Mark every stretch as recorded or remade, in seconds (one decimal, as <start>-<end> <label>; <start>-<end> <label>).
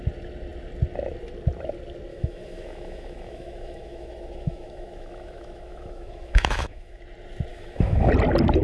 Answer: 0.0-2.1 recorded; 2.1-7.0 remade; 7.0-7.5 recorded; 7.5-8.1 remade; 8.1-8.6 recorded